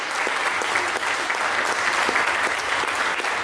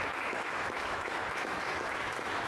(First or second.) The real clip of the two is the first